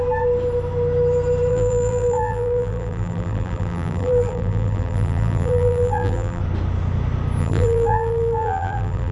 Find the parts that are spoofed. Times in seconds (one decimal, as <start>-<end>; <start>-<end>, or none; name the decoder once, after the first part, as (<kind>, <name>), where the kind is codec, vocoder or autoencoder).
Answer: 1.5-6.4 (vocoder, BigVGAN v2); 7.4-9.1